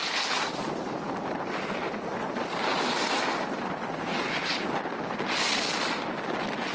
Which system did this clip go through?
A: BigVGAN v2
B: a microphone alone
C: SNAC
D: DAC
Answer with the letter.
B